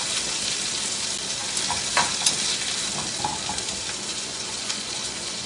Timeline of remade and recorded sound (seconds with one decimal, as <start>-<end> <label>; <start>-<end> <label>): 0.0-4.1 recorded; 4.1-5.5 remade